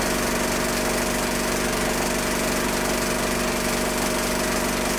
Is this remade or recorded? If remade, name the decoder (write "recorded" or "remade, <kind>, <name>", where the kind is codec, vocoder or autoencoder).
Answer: recorded